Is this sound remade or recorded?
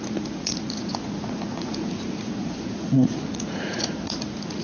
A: remade